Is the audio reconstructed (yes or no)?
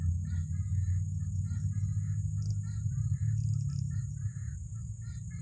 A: no